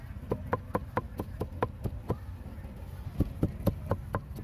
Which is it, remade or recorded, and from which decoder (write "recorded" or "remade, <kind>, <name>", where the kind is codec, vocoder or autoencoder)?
recorded